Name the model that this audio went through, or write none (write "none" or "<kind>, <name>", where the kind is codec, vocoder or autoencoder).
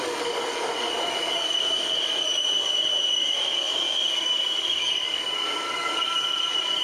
codec, DAC